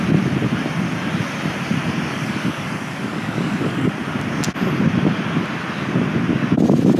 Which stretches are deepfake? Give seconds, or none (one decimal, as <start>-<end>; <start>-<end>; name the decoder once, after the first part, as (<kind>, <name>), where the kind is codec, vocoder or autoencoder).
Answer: 2.1-3.9 (codec, DAC)